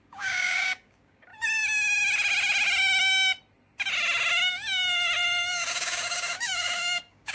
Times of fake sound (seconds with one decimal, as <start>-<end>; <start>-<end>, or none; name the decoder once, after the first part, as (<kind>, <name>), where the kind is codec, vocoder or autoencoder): 0.0-1.3 (codec, DAC); 5.7-7.3